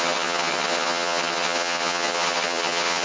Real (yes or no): no